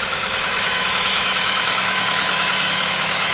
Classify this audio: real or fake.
fake